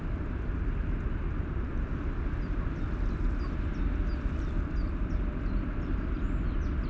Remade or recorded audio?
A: recorded